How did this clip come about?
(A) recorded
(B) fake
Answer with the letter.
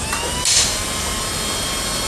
A